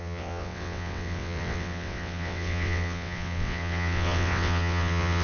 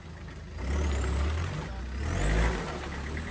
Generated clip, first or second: first